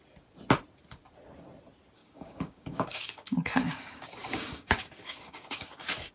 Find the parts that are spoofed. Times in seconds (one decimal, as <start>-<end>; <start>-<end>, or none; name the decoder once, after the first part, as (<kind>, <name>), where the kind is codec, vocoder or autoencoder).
2.0-6.1 (codec, DAC)